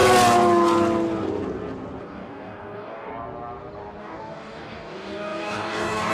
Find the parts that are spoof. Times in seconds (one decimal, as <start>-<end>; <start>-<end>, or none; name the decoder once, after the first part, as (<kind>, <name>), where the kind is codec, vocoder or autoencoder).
2.0-3.1 (codec, DAC); 4.0-6.1